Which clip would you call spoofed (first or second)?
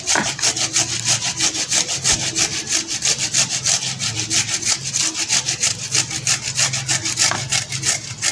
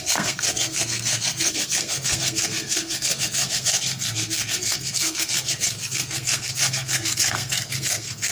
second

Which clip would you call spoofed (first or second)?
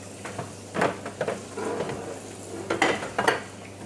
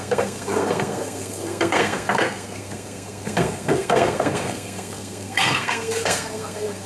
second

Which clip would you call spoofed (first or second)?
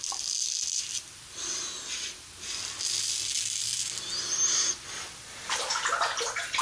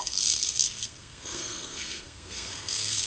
second